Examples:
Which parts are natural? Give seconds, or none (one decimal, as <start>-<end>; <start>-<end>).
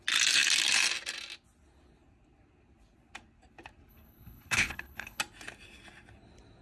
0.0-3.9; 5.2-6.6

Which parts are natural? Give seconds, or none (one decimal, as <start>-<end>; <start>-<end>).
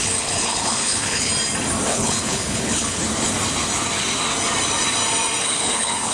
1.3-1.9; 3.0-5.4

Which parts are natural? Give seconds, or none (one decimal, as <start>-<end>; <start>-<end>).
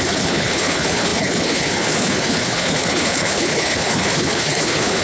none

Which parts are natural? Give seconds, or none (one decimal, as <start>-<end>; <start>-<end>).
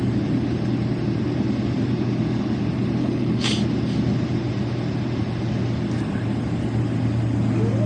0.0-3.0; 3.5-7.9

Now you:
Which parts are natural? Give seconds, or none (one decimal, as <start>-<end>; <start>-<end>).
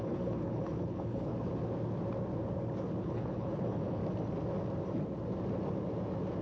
1.3-3.0; 4.0-6.4